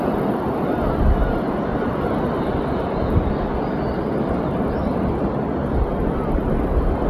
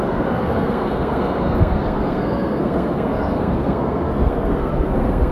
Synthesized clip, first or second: second